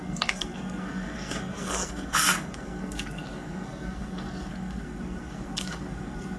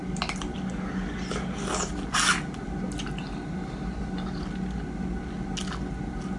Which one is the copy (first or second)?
first